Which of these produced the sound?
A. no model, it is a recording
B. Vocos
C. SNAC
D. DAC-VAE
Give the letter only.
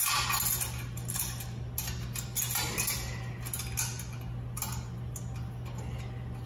A